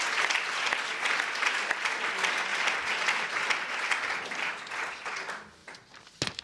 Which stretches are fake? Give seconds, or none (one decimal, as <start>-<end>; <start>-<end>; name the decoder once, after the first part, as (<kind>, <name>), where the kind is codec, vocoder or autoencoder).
none